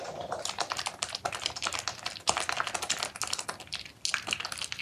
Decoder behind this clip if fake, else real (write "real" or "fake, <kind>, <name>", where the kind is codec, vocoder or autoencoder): real